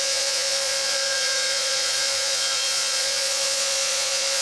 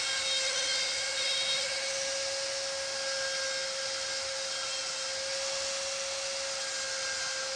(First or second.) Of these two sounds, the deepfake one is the first